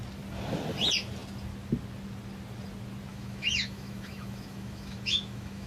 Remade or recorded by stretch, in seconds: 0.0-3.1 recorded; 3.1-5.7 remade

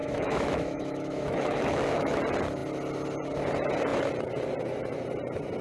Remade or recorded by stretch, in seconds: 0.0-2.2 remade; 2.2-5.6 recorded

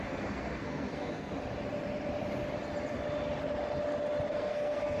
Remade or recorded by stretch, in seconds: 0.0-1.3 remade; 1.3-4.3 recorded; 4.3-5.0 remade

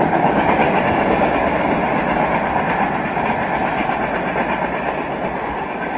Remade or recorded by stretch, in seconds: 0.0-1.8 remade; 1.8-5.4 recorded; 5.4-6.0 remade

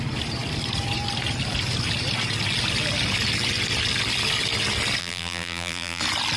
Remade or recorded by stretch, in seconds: 0.0-5.0 recorded; 5.0-6.0 remade; 6.0-6.4 recorded

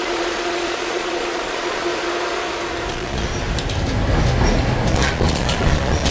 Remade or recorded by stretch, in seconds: 0.0-1.9 remade; 1.9-2.9 recorded; 2.9-3.3 remade; 3.3-4.9 recorded; 4.9-6.1 remade